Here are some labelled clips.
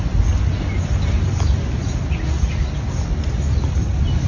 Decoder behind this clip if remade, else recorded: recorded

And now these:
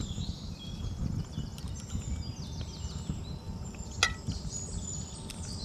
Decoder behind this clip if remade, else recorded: recorded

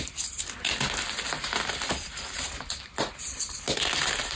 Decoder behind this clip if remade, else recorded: recorded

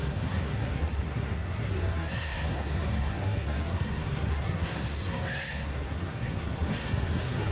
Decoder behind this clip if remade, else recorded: remade, codec, SNAC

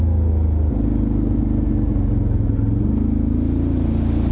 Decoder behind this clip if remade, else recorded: recorded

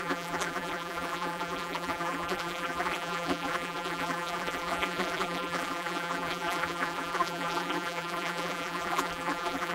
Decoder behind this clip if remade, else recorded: remade, vocoder, BigVGAN v2